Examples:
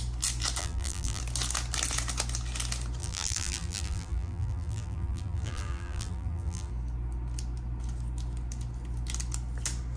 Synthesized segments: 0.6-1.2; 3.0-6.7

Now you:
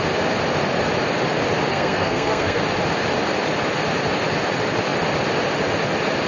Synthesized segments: 1.7-2.6

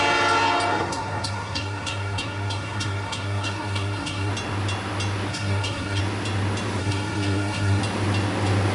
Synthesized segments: 0.7-4.3; 5.3-6.0; 6.8-7.8

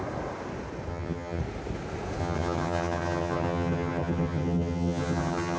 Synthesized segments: 0.9-1.4; 2.2-5.6

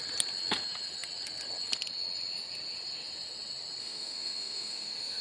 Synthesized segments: 3.8-5.2